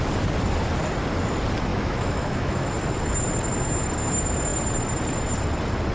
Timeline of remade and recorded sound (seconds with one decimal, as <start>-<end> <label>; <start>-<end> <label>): 0.0-1.7 recorded; 1.7-2.7 remade; 2.7-5.9 recorded

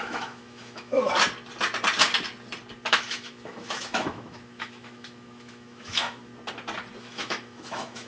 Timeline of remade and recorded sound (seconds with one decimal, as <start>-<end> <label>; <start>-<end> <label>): 0.0-1.0 remade; 1.0-2.9 recorded; 2.9-6.3 remade; 6.3-7.0 recorded; 7.0-8.1 remade

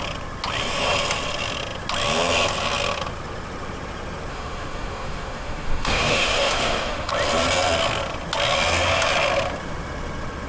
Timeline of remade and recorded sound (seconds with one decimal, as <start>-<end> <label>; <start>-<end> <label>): 0.0-4.3 recorded; 4.3-7.1 remade; 7.1-10.5 recorded

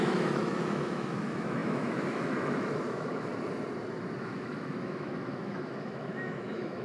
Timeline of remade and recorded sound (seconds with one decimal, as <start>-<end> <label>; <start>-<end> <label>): 0.0-3.3 remade; 3.3-4.2 recorded; 4.2-6.8 remade

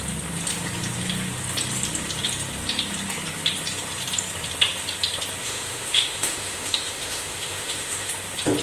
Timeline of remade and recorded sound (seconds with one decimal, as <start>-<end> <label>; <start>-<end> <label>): 0.0-5.4 recorded; 5.4-8.1 remade; 8.1-8.6 recorded

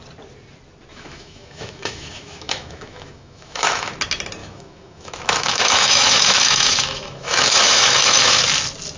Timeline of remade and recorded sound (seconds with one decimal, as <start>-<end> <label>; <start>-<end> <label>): 0.0-0.9 recorded; 0.9-3.9 remade; 3.9-4.4 recorded; 4.4-8.4 remade; 8.4-9.0 recorded

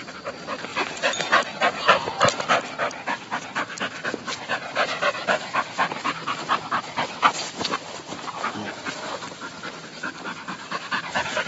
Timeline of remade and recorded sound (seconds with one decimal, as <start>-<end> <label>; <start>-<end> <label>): 0.0-11.5 recorded